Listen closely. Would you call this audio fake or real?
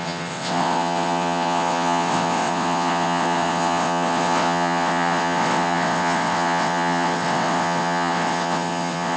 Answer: fake